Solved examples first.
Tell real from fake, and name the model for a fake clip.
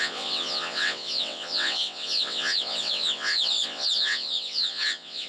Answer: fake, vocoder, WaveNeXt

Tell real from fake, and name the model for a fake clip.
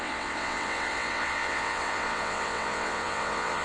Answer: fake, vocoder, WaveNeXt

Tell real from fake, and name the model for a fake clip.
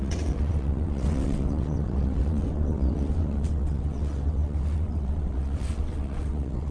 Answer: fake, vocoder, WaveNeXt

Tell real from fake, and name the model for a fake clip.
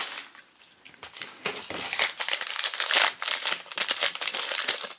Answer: real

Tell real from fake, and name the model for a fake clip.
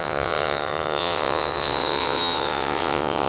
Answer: fake, vocoder, WaveNeXt